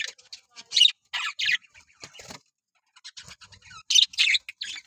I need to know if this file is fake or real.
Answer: real